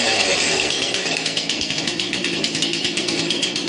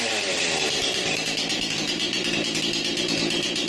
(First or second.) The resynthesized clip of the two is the first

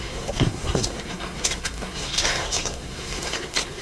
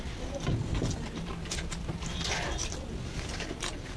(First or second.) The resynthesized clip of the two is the first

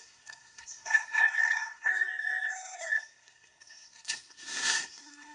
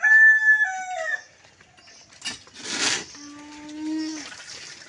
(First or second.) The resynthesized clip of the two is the first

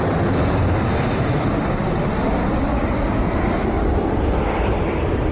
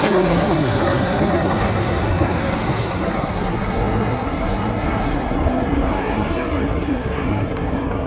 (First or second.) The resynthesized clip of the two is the second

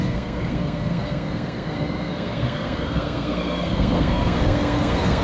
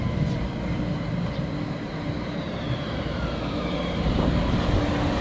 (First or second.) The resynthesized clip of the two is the first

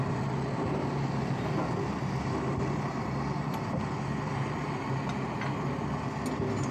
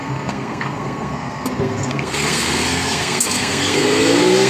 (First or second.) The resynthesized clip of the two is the second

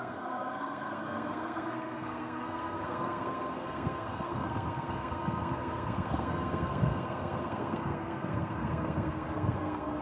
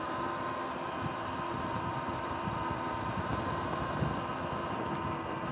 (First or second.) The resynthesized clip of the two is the first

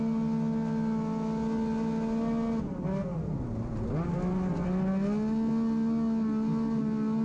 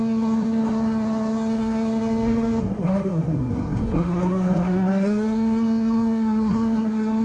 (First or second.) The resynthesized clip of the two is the second